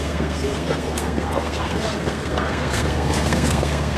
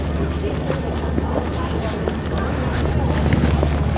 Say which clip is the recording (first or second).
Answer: second